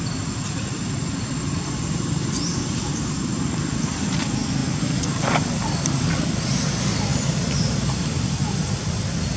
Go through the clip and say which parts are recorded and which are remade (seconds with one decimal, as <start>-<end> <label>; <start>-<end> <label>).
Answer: 0.0-4.6 recorded; 4.6-6.1 remade; 6.1-9.4 recorded